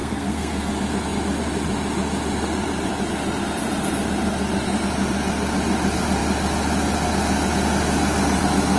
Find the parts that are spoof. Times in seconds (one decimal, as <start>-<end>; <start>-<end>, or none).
0.0-0.7